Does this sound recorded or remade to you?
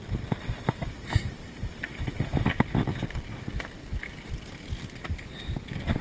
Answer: recorded